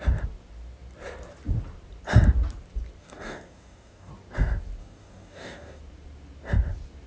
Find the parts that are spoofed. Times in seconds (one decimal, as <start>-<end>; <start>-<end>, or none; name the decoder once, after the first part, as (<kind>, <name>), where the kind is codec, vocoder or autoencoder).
3.0-4.1 (codec, DAC); 4.8-5.8